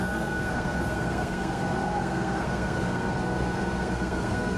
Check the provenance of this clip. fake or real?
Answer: fake